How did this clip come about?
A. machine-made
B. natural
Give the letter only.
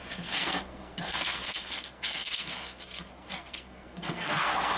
A